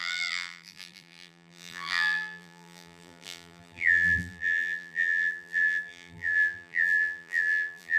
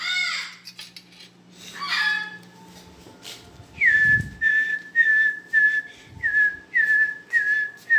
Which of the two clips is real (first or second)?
second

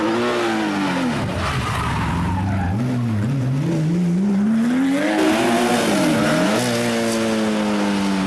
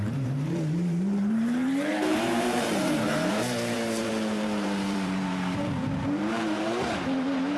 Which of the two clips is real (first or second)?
first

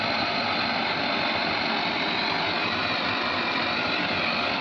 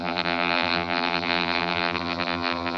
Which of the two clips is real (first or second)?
first